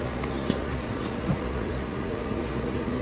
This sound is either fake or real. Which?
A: fake